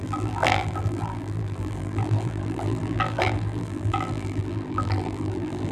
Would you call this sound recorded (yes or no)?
no